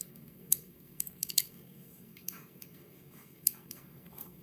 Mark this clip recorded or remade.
remade